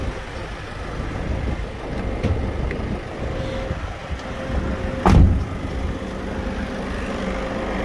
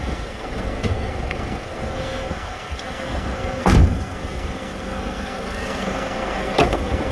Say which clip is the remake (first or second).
second